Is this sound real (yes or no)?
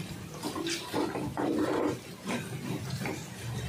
yes